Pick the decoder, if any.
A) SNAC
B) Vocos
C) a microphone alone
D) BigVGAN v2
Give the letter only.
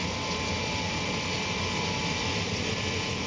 C